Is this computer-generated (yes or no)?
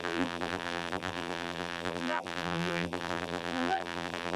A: yes